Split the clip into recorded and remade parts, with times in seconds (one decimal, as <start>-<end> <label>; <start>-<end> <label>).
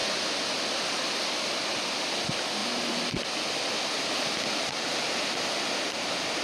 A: 0.0-6.4 recorded